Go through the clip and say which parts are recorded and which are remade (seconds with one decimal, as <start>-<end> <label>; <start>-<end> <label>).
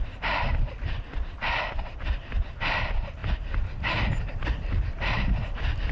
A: 0.0-0.5 remade; 0.5-2.6 recorded; 2.6-5.9 remade